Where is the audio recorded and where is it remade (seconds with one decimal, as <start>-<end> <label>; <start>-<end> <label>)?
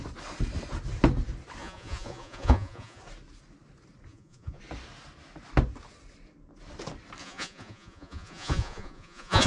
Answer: 0.0-1.6 recorded; 1.6-3.0 remade; 3.0-4.1 recorded; 4.1-4.6 remade; 4.6-7.2 recorded; 7.2-9.5 remade